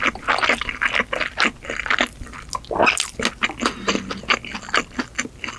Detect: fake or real real